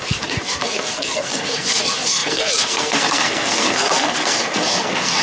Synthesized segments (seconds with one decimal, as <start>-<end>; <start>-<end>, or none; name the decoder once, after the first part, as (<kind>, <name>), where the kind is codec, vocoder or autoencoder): 0.0-5.2 (codec, SNAC)